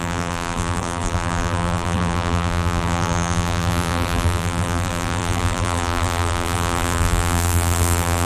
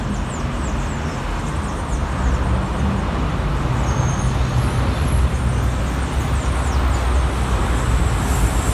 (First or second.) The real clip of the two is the second